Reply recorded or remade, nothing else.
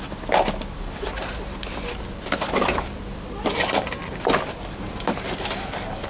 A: recorded